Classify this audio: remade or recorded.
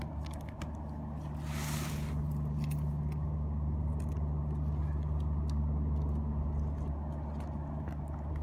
recorded